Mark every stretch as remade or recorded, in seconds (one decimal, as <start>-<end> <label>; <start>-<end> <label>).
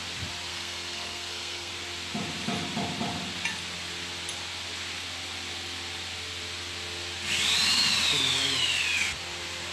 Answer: 0.0-0.5 recorded; 0.5-1.7 remade; 1.7-9.7 recorded